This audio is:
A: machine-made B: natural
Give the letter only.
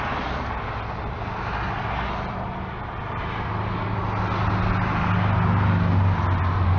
B